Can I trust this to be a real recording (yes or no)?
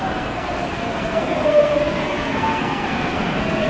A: no